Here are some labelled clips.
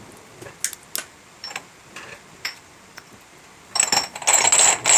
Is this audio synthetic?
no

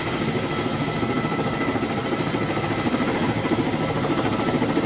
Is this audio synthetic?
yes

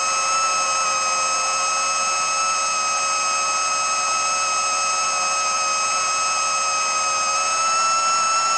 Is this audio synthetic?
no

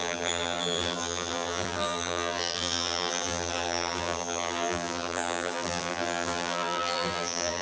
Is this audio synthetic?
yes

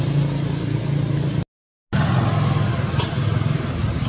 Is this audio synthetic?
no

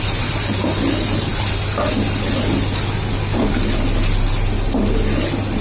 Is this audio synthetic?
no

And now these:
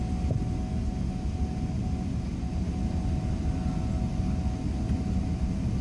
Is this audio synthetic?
no